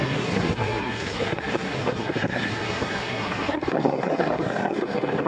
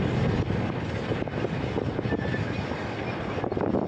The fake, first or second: first